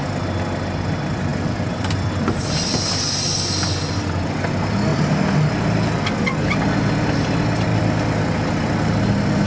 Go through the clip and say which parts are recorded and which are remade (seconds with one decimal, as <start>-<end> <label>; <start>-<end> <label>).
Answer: 0.0-1.3 recorded; 1.3-2.1 remade; 2.1-7.7 recorded; 7.7-8.9 remade; 8.9-9.5 recorded